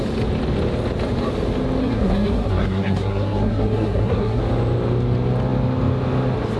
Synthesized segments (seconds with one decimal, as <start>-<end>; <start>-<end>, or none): 1.8-4.4